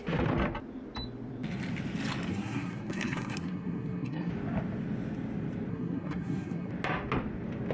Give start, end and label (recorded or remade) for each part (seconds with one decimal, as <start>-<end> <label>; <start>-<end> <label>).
0.0-2.3 recorded; 2.3-4.3 remade; 4.3-5.7 recorded; 5.7-6.7 remade; 6.7-7.7 recorded

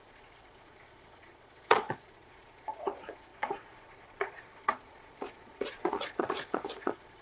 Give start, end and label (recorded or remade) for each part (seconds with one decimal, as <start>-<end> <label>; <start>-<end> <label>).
0.0-7.2 remade

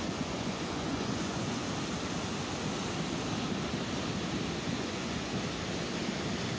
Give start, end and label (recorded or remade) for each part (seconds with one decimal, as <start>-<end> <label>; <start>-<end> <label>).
0.0-1.6 remade; 1.6-4.6 recorded; 4.6-5.3 remade; 5.3-6.6 recorded